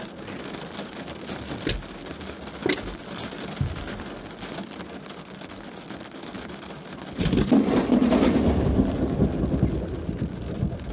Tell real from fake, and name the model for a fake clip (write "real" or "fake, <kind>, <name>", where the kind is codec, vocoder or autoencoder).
real